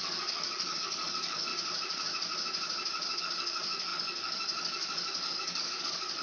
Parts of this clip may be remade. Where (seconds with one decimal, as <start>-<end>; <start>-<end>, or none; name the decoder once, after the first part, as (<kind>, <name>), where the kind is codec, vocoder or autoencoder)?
0.0-1.5 (codec, DAC); 3.2-6.2